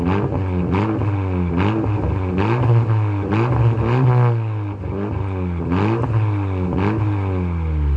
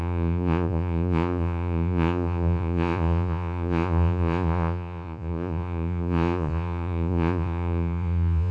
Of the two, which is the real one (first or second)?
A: first